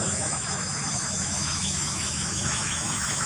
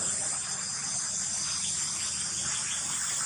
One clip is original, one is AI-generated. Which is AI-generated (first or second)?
first